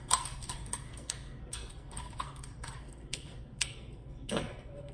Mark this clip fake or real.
fake